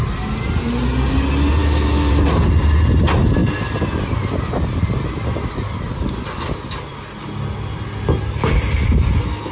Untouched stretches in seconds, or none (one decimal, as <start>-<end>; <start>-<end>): 0.0-1.6; 2.1-9.5